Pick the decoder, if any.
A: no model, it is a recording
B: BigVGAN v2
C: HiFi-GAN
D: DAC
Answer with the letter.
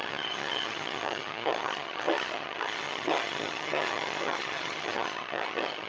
C